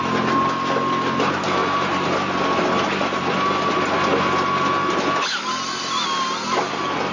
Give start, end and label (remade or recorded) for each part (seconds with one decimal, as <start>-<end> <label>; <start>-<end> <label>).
0.0-7.1 recorded